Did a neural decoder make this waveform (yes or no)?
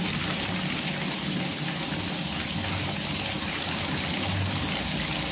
no